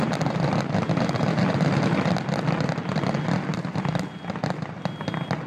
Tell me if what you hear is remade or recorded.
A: recorded